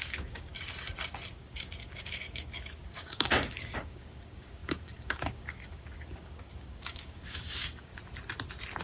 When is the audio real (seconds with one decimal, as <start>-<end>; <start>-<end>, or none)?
0.5-1.3; 7.9-8.8